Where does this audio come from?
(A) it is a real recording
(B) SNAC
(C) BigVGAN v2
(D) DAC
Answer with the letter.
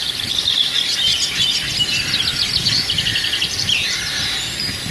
A